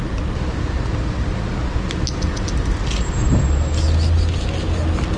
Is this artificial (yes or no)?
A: no